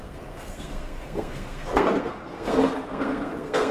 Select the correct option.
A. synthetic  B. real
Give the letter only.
A